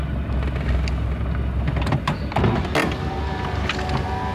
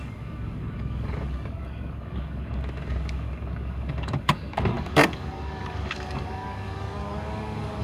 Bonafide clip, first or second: first